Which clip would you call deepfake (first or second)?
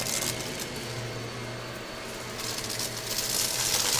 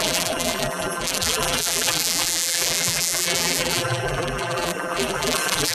second